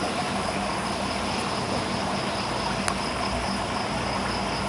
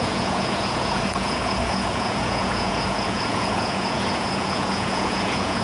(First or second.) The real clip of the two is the first